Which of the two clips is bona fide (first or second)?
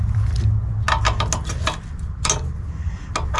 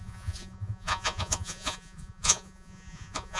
first